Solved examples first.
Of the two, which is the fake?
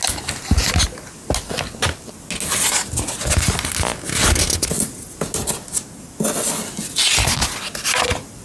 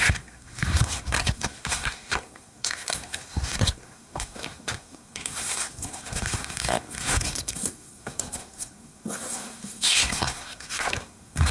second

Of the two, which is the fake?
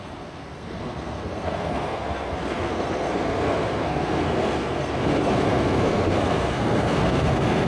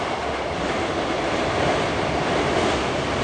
first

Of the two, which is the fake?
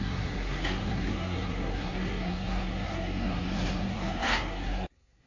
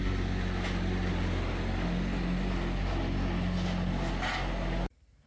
first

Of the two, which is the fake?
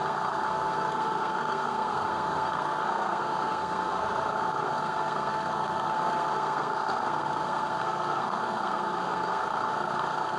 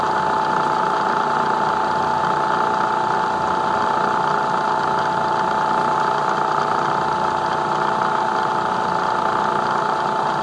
first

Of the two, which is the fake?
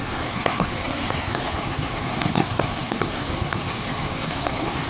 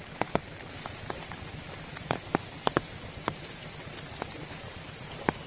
first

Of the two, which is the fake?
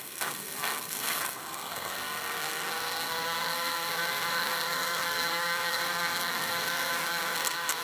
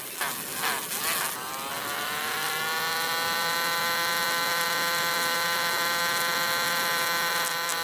first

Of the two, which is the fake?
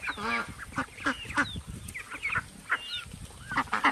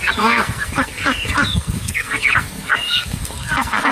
second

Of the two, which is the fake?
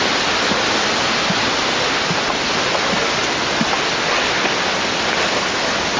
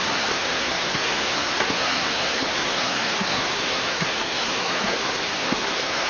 second